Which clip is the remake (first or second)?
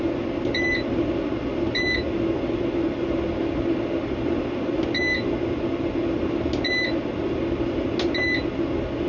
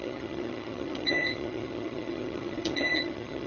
second